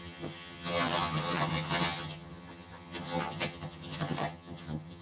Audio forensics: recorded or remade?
remade